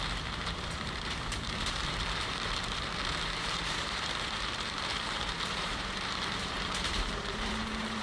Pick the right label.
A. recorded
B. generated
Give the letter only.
B